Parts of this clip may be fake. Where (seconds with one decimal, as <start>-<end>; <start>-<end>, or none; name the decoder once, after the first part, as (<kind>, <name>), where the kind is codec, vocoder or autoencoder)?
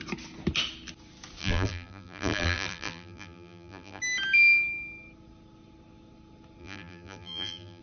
1.4-4.0 (vocoder, BigVGAN v2); 6.6-7.8